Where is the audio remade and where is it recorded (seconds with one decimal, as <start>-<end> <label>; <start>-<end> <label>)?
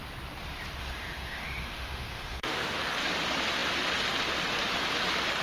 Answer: 0.0-0.8 recorded; 0.8-2.8 remade; 2.8-5.4 recorded